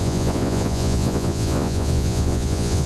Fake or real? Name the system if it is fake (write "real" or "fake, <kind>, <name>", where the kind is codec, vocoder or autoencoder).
fake, vocoder, Vocos